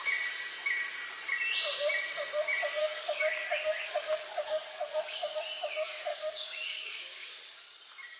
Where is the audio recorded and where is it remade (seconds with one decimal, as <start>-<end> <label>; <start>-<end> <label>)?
0.0-2.8 recorded; 2.8-5.4 remade; 5.4-6.1 recorded; 6.1-7.3 remade; 7.3-8.2 recorded